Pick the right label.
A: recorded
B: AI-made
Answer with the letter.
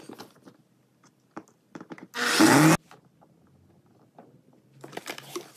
A